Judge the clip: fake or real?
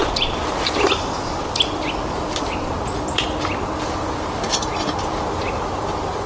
real